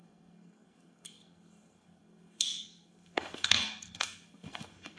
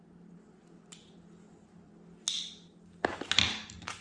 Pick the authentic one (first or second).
second